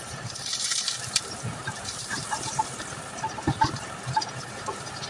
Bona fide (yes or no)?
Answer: no